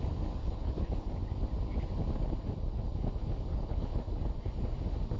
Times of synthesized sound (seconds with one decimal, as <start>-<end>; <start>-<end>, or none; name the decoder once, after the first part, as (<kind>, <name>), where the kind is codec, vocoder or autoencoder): 0.4-1.1 (codec, HILCodec); 3.5-4.0